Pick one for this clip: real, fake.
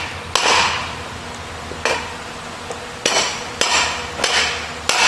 real